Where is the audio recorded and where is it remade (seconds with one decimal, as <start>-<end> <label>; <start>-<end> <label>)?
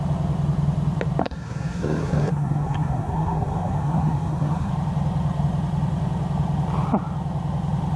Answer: 0.0-1.2 recorded; 1.2-4.7 remade; 4.7-8.0 recorded